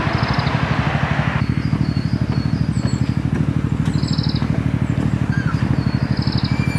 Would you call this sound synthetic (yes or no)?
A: no